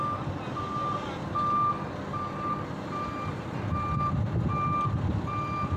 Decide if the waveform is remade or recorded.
recorded